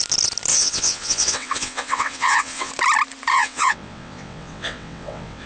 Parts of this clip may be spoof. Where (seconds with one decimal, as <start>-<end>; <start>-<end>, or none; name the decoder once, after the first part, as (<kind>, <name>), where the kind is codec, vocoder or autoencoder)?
0.5-2.7 (vocoder, WaveNeXt); 3.3-5.5